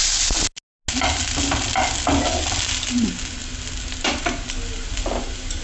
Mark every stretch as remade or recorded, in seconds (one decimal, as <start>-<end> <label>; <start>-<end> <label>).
0.0-5.6 recorded